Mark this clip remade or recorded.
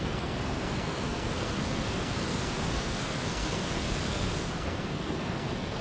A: remade